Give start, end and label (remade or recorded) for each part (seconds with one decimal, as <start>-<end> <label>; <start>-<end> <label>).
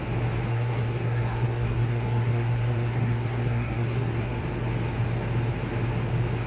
0.0-0.5 recorded; 0.5-4.4 remade; 4.4-6.5 recorded